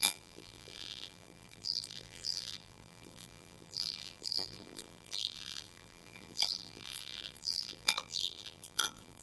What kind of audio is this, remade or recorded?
remade